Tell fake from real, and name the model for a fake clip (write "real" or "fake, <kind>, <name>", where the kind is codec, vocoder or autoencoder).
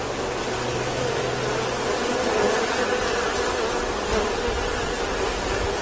real